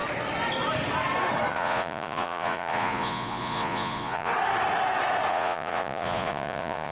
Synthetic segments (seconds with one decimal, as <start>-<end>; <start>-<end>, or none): 1.5-4.3; 5.3-6.9

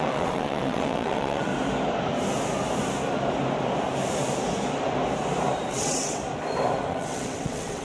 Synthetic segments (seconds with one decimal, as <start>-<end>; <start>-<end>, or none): 0.0-1.5; 5.7-6.2; 6.9-7.8

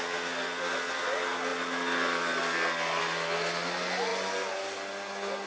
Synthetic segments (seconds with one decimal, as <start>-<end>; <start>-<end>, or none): none

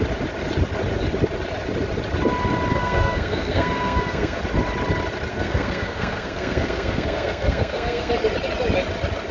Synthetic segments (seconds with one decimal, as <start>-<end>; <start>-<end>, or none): 2.7-4.4; 5.3-8.1